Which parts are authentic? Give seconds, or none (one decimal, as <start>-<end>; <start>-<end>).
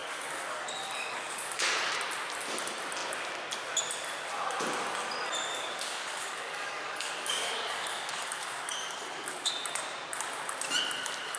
1.9-5.5; 9.5-11.4